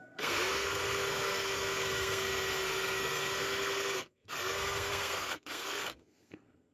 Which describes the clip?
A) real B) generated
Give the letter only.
B